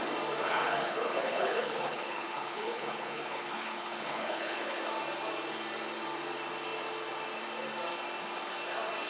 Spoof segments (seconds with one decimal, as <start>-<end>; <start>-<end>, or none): 0.4-4.8